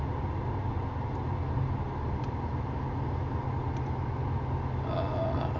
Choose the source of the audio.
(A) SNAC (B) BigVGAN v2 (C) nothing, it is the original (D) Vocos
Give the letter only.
C